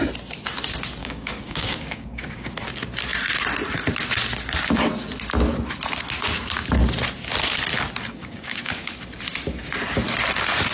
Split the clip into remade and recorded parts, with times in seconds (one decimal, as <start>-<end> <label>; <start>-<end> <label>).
0.0-1.0 recorded; 1.0-2.5 remade; 2.5-8.2 recorded; 8.2-8.9 remade; 8.9-10.7 recorded